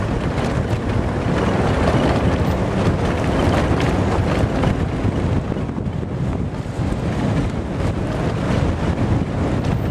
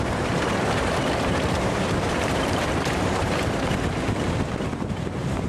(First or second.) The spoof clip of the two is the second